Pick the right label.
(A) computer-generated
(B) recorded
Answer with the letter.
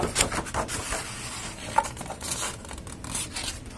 B